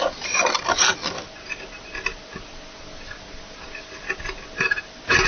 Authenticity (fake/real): real